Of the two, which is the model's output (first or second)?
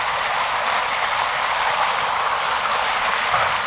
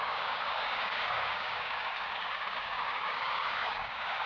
second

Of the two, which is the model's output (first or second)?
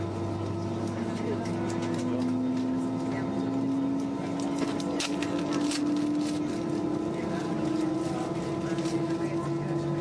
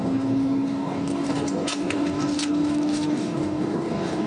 second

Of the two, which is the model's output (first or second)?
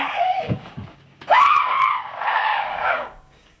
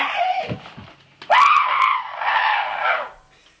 first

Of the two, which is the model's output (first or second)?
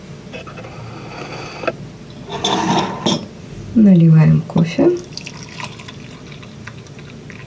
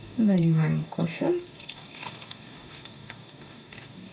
second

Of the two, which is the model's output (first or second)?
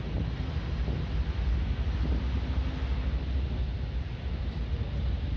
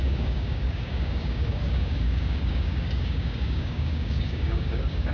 second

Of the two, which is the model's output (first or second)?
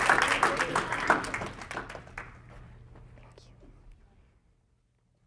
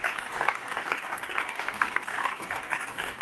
second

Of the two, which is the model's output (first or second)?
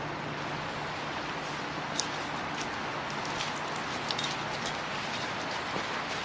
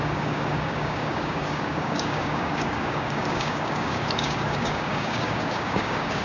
second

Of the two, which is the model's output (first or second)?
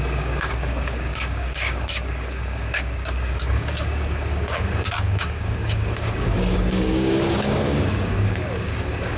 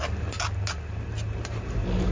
first